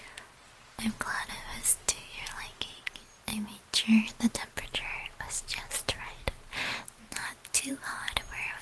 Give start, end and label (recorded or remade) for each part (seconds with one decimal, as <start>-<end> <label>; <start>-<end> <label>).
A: 0.0-1.5 recorded; 1.5-2.4 remade; 2.4-8.6 recorded